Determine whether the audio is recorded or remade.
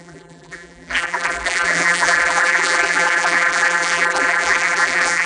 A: remade